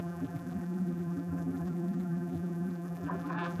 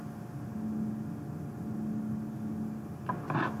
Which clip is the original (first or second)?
second